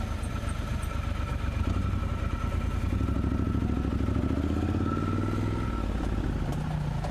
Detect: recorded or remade recorded